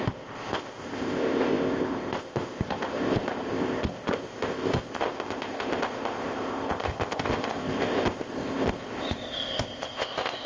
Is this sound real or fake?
fake